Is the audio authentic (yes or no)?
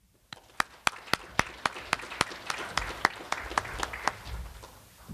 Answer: yes